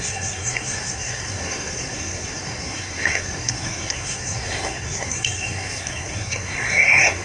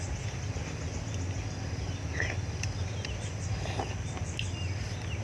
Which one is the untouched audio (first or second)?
second